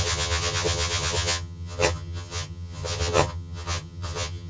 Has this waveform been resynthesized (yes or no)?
yes